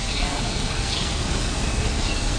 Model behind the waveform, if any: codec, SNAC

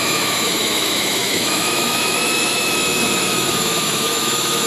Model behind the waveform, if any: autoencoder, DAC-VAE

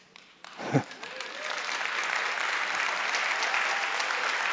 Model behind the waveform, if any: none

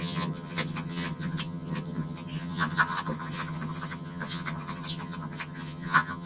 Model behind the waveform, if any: vocoder, HiFi-GAN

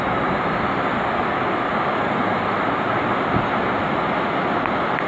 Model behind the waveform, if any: none